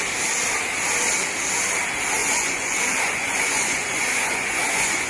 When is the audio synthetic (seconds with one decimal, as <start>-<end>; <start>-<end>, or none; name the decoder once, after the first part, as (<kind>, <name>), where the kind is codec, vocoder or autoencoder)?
2.2-5.1 (vocoder, Vocos)